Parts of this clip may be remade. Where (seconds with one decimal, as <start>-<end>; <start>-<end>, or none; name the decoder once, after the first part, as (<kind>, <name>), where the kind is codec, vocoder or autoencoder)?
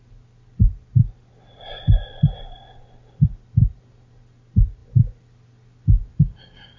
none